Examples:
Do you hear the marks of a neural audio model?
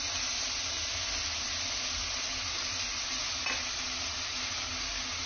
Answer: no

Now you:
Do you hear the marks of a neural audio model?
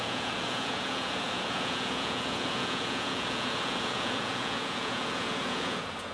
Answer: yes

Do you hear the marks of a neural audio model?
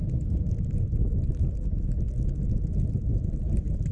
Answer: no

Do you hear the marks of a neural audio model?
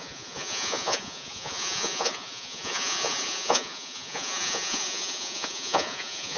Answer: yes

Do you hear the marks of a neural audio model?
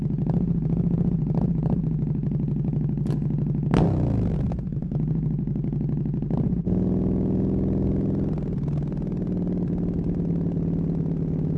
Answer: no